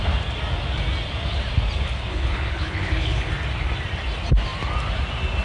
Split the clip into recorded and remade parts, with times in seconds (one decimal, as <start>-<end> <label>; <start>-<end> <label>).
0.0-2.1 recorded; 2.1-3.3 remade; 3.3-5.4 recorded